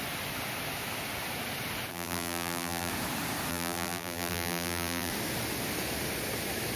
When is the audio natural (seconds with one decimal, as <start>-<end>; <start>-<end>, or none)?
0.0-1.9; 2.9-3.5; 5.1-6.8